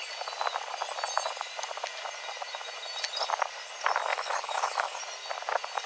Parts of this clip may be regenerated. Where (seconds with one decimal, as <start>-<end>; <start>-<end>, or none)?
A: 4.1-5.0